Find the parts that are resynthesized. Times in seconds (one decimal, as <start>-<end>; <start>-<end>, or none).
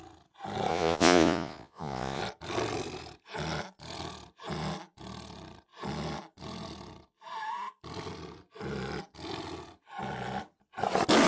0.7-2.2